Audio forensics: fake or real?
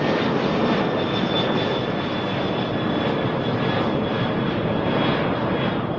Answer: real